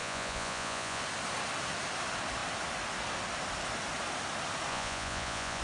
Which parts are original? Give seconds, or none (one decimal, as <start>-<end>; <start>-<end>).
1.0-4.7